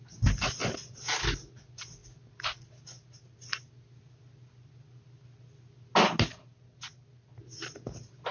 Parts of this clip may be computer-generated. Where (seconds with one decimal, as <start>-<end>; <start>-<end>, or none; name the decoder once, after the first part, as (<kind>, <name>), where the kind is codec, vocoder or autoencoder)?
none